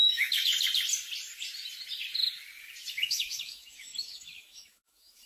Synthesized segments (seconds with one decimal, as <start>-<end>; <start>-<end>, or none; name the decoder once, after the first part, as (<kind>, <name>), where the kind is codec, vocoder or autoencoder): 0.0-0.5 (autoencoder, DAC-VAE); 2.9-5.3